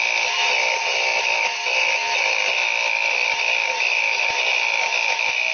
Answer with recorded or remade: recorded